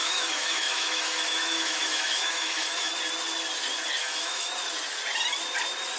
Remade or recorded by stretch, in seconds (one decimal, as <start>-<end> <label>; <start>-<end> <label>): 0.0-2.9 remade; 2.9-4.0 recorded; 4.0-4.5 remade; 4.5-6.0 recorded